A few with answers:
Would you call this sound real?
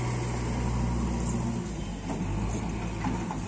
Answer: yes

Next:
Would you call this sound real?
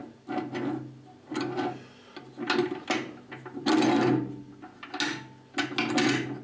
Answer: yes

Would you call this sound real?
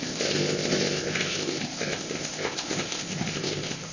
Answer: no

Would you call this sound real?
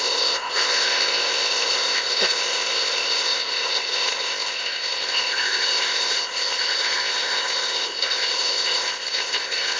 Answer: no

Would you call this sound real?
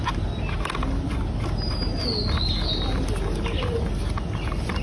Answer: yes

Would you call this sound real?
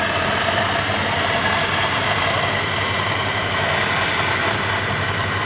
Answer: yes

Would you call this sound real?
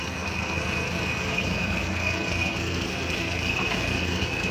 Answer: no